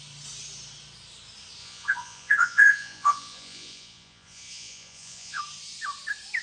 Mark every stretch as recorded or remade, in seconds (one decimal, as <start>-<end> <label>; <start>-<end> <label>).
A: 0.0-1.6 recorded; 1.6-5.4 remade; 5.4-6.4 recorded